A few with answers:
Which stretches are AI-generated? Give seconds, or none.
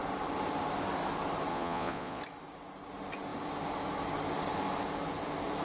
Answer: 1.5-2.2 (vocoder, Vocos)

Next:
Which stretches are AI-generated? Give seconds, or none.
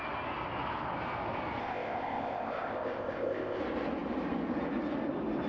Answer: 1.6-3.6 (codec, ZipCodec)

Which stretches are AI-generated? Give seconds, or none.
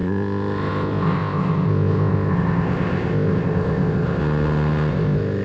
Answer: 0.0-4.2 (codec, ZipCodec); 4.9-5.4